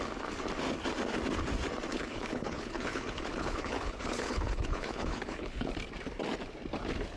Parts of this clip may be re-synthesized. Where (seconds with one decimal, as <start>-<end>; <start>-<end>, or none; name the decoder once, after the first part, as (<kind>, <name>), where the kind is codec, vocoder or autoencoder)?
1.9-5.7 (codec, HILCodec)